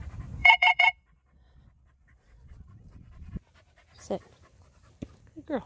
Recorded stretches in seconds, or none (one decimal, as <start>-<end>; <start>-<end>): 0.0-0.4; 3.3-5.7